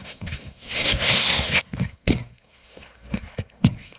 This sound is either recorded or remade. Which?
remade